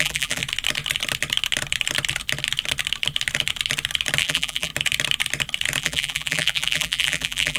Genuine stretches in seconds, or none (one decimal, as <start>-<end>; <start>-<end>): 0.4-4.2; 4.7-5.8